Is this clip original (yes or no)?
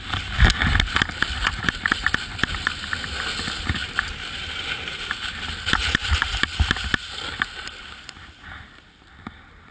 yes